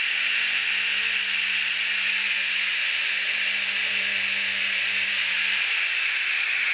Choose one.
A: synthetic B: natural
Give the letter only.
B